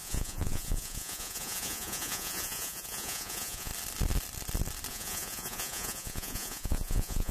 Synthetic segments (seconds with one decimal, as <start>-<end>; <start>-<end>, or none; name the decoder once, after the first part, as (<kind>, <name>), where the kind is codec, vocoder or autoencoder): 0.0-3.7 (vocoder, Vocos); 4.9-7.3